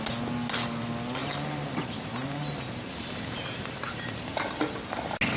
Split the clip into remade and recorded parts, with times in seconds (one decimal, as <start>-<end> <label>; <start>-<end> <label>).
0.0-1.2 recorded; 1.2-4.4 remade; 4.4-5.4 recorded